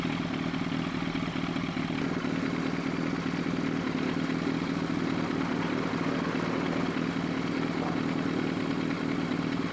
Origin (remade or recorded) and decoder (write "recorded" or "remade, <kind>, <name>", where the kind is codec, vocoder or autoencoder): recorded